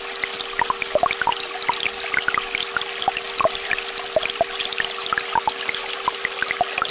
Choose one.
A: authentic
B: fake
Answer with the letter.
A